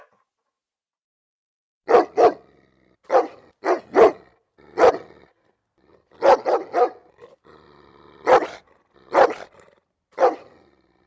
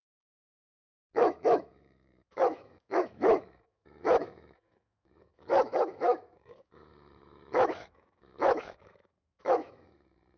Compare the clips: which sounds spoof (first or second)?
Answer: second